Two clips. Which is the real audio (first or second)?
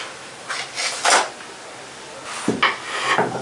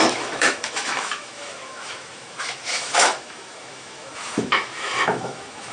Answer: first